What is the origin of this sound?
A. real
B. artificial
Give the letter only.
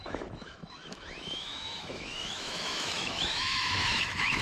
B